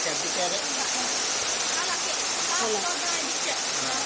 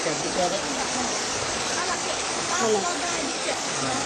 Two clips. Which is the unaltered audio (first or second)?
first